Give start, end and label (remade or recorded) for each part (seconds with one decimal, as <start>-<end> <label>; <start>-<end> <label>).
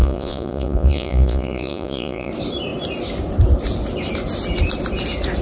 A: 0.0-2.3 remade; 2.3-5.4 recorded